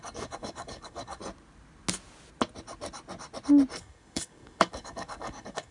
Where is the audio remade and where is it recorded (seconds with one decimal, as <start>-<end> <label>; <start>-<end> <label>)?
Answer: 0.0-1.2 remade; 1.2-3.8 recorded; 3.8-5.7 remade

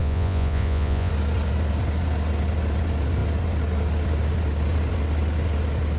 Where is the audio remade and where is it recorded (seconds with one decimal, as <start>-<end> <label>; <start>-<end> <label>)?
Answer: 0.0-1.1 remade; 1.1-6.0 recorded

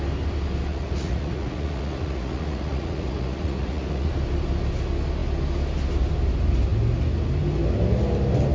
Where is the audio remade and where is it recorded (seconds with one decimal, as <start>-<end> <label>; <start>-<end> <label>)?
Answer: 0.0-0.7 recorded; 0.7-4.1 remade; 4.1-8.5 recorded

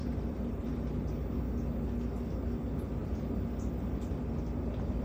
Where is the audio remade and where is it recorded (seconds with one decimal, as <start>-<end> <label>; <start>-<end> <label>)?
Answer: 0.0-1.1 remade; 1.1-3.0 recorded; 3.0-4.3 remade; 4.3-5.0 recorded